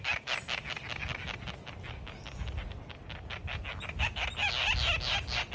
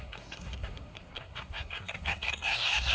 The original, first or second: first